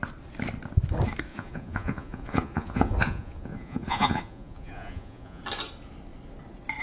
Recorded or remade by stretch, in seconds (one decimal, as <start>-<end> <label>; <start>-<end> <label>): 0.0-1.3 recorded; 1.3-5.4 remade; 5.4-6.8 recorded